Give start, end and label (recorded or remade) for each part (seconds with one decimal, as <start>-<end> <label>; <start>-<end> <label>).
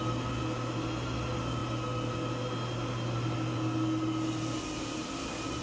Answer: 0.0-5.6 recorded